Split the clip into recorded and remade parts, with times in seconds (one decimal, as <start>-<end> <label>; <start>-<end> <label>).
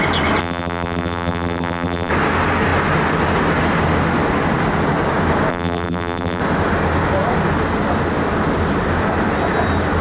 0.0-0.4 recorded; 0.4-2.1 remade; 2.1-5.5 recorded; 5.5-6.4 remade; 6.4-10.0 recorded